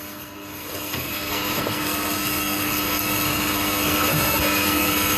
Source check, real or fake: fake